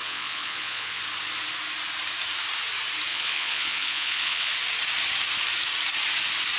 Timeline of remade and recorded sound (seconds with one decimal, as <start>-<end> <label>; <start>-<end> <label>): 0.0-1.0 remade; 1.0-3.1 recorded; 3.1-4.5 remade; 4.5-6.6 recorded